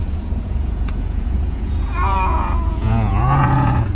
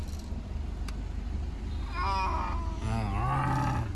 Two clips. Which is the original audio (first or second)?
second